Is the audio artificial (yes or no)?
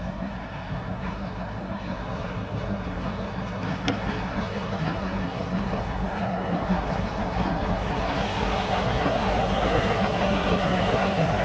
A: yes